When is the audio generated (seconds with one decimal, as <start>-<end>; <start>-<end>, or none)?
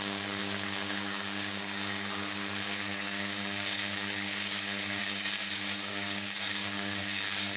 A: 0.0-7.6